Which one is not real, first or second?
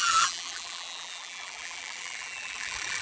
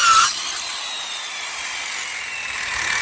first